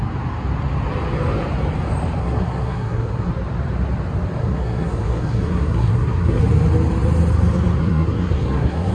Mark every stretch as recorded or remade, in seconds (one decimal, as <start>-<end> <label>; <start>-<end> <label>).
0.0-2.2 recorded; 2.2-3.3 remade; 3.3-4.4 recorded; 4.4-6.4 remade; 6.4-7.8 recorded; 7.8-8.9 remade